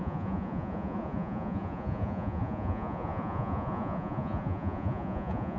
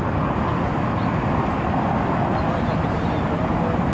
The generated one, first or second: first